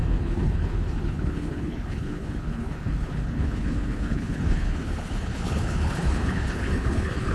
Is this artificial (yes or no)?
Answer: yes